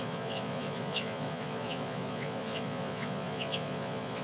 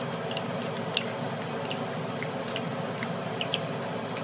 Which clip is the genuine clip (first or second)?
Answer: second